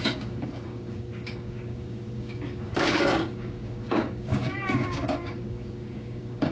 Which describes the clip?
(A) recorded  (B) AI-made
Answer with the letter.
B